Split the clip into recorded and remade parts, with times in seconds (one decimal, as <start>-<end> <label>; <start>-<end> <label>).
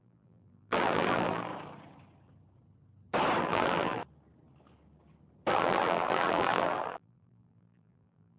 0.0-1.5 remade; 1.5-3.4 recorded; 3.4-4.0 remade; 4.0-5.5 recorded; 5.5-8.4 remade